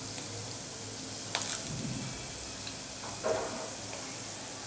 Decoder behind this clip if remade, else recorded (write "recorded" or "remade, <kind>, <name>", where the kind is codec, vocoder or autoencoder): recorded